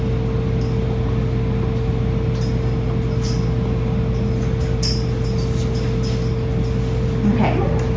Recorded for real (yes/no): yes